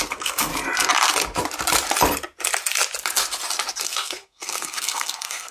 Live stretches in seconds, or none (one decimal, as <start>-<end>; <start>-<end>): 0.5-3.8